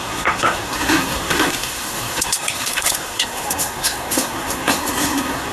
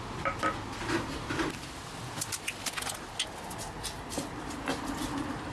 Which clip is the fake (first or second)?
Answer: first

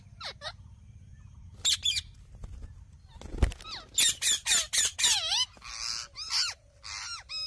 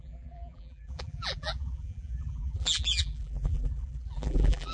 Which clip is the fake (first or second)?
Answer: second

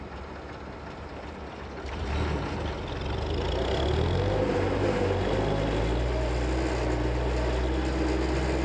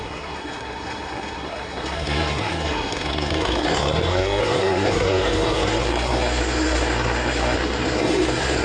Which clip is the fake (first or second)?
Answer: second